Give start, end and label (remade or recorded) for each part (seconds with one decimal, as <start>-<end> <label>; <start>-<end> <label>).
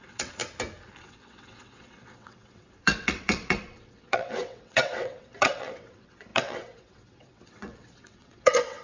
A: 0.0-0.4 remade; 0.4-1.0 recorded; 1.0-8.8 remade